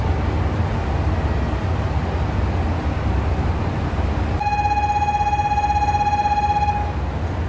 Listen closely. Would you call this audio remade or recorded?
recorded